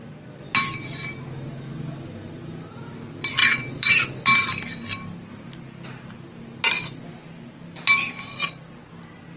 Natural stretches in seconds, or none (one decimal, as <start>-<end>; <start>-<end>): 0.0-9.4